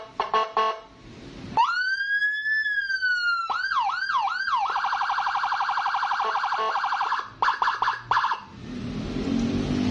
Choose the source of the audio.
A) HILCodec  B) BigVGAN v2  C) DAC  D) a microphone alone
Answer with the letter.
D